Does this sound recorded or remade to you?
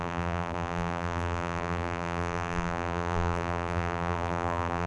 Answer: remade